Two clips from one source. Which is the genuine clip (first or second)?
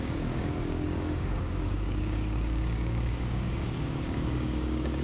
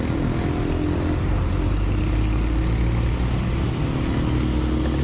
second